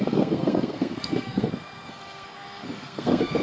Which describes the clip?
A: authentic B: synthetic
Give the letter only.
B